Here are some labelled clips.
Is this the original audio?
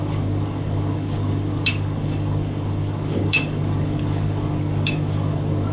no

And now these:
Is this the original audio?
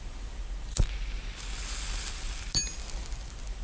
yes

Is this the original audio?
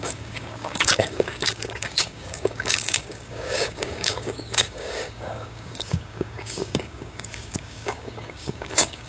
no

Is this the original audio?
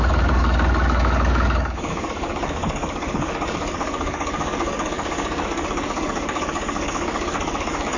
no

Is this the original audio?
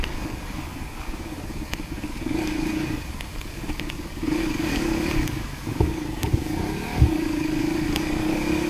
no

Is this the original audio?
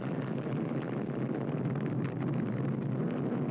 yes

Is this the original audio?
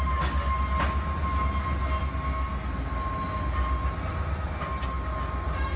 yes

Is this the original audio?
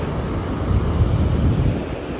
yes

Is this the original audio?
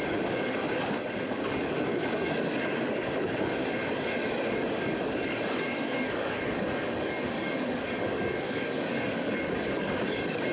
no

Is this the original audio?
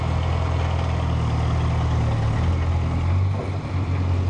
yes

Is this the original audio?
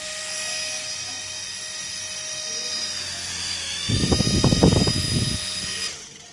yes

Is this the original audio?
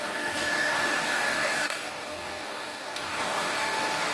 no